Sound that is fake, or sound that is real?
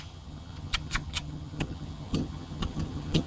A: fake